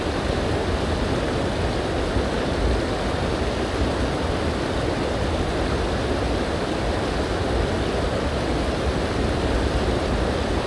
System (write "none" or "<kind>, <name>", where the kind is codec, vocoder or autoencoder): none